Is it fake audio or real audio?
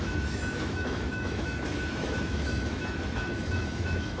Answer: fake